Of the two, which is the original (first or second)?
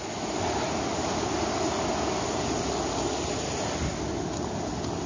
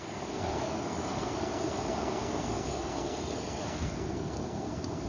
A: first